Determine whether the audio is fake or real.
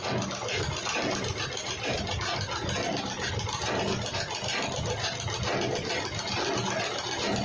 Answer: real